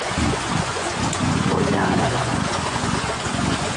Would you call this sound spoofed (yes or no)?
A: yes